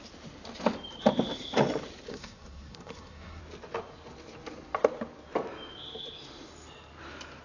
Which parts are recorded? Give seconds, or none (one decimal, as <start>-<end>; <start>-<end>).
0.0-2.1; 3.4-7.4